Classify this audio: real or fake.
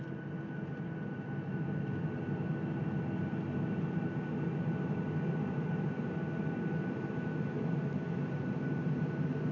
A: real